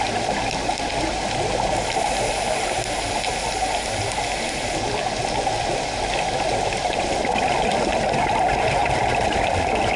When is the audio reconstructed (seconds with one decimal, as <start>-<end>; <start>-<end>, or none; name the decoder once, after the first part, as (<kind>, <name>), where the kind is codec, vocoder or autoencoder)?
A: none